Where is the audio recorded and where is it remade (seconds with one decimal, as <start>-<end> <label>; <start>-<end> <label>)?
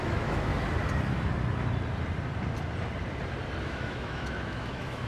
0.0-0.5 remade; 0.5-3.6 recorded; 3.6-5.1 remade